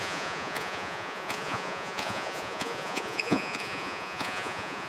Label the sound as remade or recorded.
remade